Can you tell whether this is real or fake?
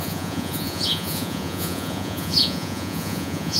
fake